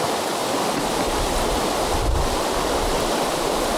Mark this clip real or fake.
real